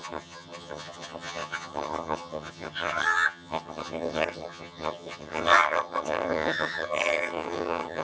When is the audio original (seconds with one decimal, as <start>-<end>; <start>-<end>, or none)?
none